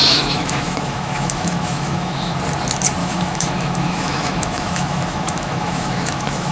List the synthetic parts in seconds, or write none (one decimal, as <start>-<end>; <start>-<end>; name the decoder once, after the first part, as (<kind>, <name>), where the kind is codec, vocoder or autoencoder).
0.0-2.4 (autoencoder, DAC-VAE); 3.0-6.5